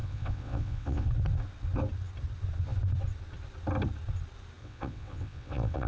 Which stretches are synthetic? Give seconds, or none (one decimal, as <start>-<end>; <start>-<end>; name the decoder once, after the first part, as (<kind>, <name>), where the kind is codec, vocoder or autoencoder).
0.0-1.1 (vocoder, WaveNeXt); 4.6-5.9